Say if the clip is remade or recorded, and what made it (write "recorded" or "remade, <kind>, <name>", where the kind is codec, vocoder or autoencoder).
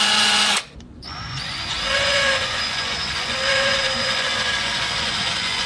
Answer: remade, vocoder, Vocos